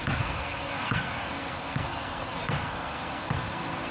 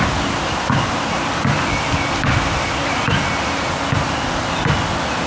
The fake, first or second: first